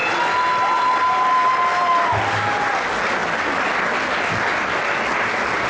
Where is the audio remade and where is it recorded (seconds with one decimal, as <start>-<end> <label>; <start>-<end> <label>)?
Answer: 0.0-5.7 recorded